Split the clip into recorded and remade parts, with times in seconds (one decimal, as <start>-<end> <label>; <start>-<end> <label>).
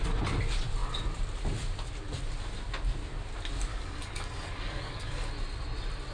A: 0.0-3.7 recorded; 3.7-5.3 remade; 5.3-6.1 recorded